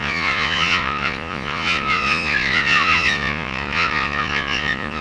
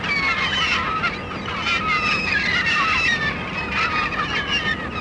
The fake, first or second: first